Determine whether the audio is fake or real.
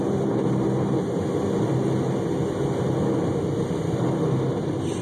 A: real